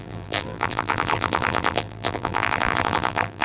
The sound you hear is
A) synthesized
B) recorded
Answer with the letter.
A